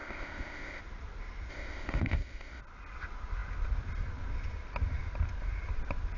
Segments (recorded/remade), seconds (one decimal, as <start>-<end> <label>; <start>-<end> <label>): 0.0-0.8 remade; 0.8-1.5 recorded; 1.5-2.6 remade; 2.6-6.2 recorded